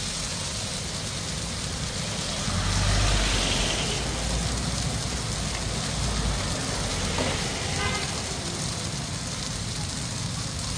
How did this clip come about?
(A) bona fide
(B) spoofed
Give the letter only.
A